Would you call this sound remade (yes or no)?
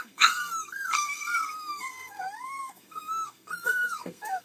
yes